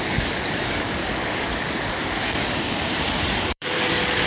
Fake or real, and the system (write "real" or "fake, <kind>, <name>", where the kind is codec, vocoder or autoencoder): fake, codec, DAC